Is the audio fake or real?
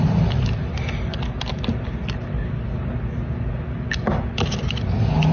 real